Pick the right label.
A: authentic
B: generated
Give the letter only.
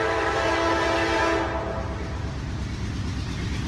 A